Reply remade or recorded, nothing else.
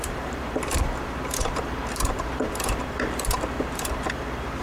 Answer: remade